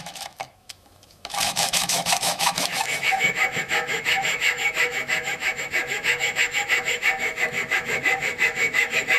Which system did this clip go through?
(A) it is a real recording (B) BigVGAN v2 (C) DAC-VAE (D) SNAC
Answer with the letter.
C